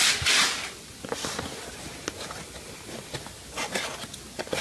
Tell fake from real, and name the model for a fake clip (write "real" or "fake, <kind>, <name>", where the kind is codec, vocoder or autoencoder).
real